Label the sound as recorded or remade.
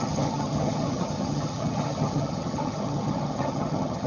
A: remade